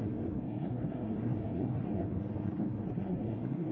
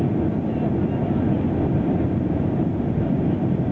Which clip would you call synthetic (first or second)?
first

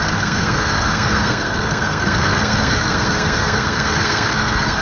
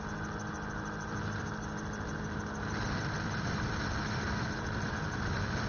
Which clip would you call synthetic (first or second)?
first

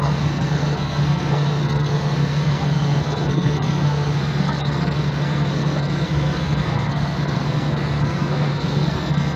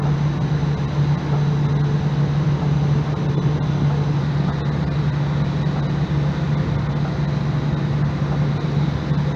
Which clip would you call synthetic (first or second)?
first